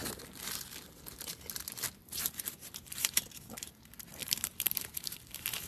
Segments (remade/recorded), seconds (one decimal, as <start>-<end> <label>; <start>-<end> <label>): 0.0-2.0 recorded; 2.0-3.8 remade; 3.8-4.2 recorded; 4.2-5.1 remade; 5.1-5.7 recorded